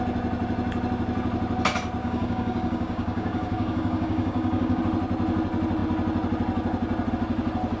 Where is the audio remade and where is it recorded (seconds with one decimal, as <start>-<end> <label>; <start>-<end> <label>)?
0.0-2.0 recorded; 2.0-4.8 remade; 4.8-7.8 recorded